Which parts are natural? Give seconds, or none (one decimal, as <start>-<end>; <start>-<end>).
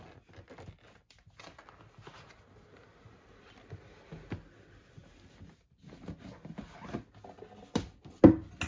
0.0-8.7